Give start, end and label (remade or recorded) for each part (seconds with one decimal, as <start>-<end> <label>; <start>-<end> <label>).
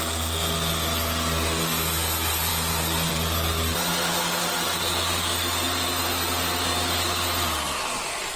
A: 0.0-8.4 recorded